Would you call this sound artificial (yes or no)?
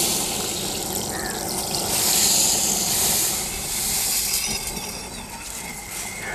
no